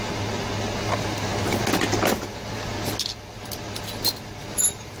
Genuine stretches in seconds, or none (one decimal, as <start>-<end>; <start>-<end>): 0.0-4.5